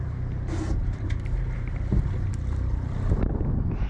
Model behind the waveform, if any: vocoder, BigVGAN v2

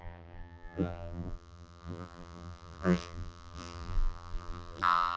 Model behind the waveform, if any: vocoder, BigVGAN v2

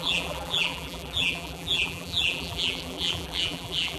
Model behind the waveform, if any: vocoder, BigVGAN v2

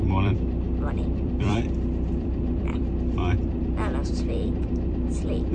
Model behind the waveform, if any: vocoder, BigVGAN v2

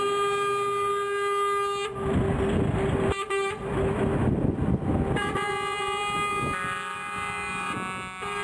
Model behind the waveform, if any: none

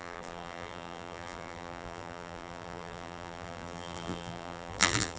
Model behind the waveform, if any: vocoder, BigVGAN v2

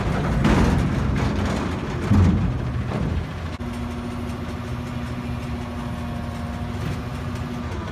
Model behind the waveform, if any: none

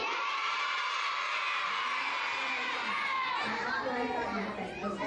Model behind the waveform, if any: vocoder, BigVGAN v2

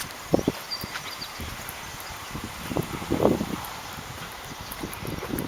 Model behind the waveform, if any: vocoder, BigVGAN v2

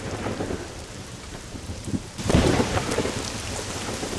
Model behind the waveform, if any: vocoder, BigVGAN v2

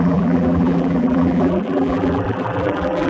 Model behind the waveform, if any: vocoder, BigVGAN v2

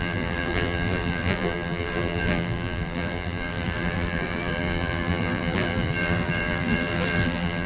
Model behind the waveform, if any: vocoder, BigVGAN v2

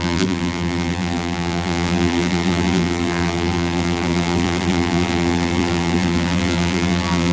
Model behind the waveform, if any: vocoder, BigVGAN v2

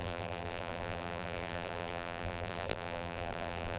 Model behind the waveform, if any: vocoder, BigVGAN v2